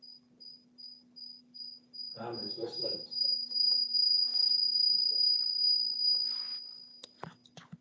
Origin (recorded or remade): recorded